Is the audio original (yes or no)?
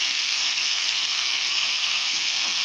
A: no